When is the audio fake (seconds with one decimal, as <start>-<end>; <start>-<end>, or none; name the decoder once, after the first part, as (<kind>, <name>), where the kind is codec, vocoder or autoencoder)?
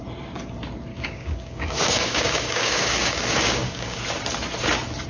0.9-4.0 (codec, DAC)